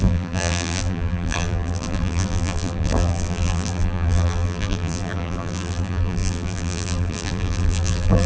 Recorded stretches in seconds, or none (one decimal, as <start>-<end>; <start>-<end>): none